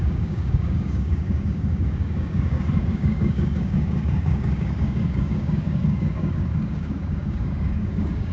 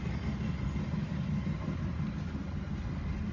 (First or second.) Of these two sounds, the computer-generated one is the first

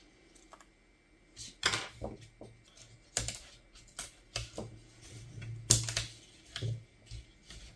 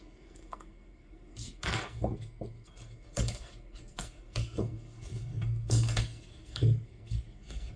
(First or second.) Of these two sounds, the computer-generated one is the second